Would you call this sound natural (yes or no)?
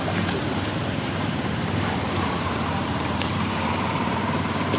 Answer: no